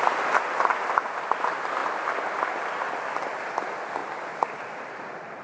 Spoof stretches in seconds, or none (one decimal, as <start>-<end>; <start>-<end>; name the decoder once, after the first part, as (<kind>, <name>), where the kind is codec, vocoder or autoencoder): 4.0-5.0 (vocoder, BigVGAN v2)